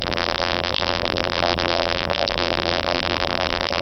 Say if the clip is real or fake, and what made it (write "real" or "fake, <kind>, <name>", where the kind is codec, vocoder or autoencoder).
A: fake, vocoder, BigVGAN v2